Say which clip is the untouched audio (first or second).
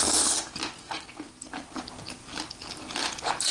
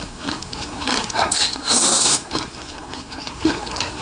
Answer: first